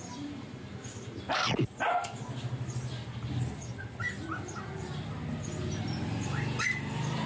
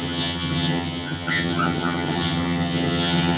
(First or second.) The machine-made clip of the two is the second